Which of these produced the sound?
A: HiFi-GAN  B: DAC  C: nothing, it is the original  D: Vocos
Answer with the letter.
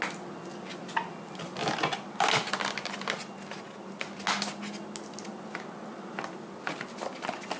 C